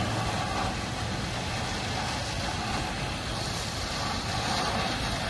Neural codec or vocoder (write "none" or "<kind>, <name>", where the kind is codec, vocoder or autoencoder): none